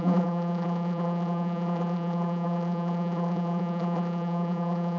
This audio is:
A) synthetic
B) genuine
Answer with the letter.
A